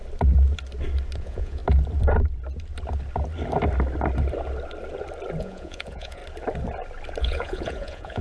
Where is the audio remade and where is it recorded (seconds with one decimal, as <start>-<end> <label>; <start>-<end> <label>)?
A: 0.0-1.2 recorded; 1.2-1.6 remade; 1.6-5.4 recorded; 5.4-6.2 remade; 6.2-7.2 recorded; 7.2-8.2 remade